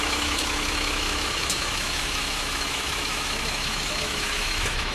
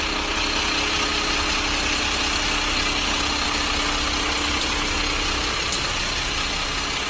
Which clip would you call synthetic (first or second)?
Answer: first